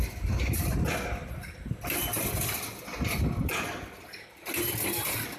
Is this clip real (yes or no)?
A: yes